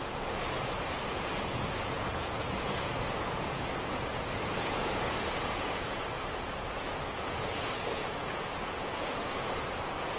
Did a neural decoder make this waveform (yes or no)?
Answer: yes